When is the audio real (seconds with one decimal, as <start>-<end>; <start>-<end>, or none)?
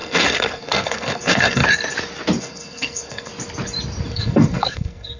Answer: 1.6-2.4; 3.3-4.1